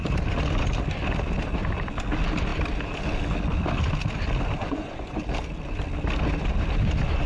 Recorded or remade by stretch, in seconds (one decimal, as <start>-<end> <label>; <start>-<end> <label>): 0.0-4.6 recorded; 4.6-5.2 remade; 5.2-7.3 recorded